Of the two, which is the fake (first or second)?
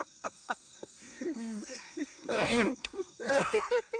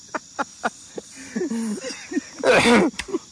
first